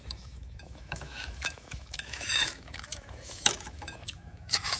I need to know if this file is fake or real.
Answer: fake